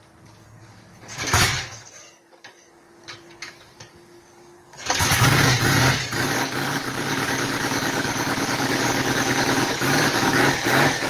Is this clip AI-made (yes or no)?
yes